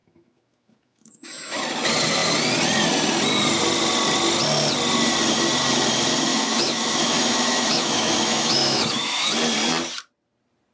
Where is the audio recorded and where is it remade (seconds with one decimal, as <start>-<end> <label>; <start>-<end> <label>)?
0.0-1.6 remade; 1.6-6.3 recorded; 6.3-9.3 remade; 9.3-10.7 recorded